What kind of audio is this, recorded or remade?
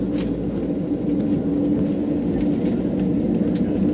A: recorded